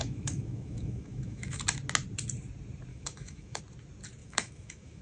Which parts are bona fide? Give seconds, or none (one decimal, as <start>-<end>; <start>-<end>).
1.6-2.9; 3.6-4.2